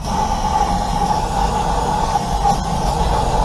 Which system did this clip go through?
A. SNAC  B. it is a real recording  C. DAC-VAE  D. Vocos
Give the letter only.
B